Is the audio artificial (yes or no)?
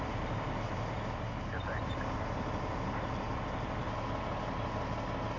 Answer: no